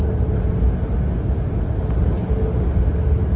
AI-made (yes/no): no